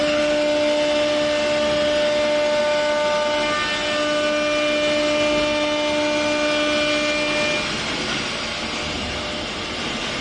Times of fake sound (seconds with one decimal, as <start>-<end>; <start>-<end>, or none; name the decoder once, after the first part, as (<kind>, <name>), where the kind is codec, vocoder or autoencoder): none